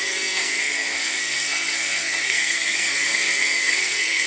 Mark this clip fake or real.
fake